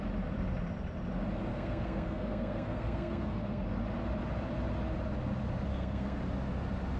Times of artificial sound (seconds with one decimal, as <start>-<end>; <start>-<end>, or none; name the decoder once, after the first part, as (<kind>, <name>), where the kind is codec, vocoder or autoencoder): 1.5-3.6 (codec, SNAC); 5.7-6.2